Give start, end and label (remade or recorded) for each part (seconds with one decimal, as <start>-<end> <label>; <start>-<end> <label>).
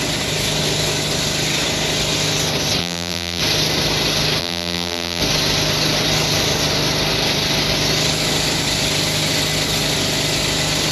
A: 0.0-2.8 recorded; 2.8-3.4 remade; 3.4-4.4 recorded; 4.4-5.2 remade; 5.2-10.9 recorded